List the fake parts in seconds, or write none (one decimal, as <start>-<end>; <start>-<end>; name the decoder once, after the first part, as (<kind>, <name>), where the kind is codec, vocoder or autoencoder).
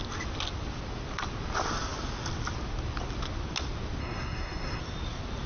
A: 4.0-4.8 (codec, SNAC)